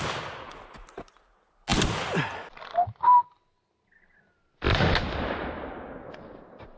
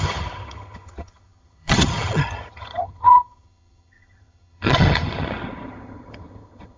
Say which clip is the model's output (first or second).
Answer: second